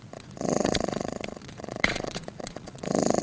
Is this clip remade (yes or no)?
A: yes